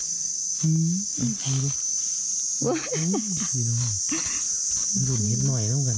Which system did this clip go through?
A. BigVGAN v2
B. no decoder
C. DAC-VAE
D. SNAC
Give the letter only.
B